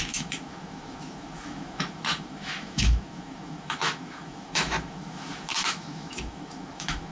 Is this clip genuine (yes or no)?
no